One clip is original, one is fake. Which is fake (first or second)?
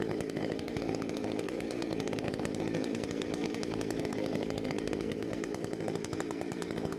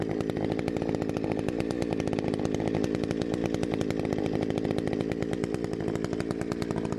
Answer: first